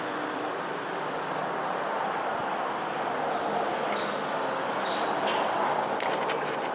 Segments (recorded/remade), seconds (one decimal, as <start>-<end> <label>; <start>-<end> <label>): 0.0-6.7 recorded